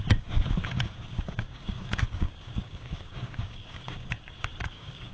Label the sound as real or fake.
fake